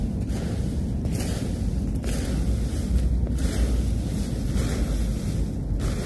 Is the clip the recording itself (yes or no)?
yes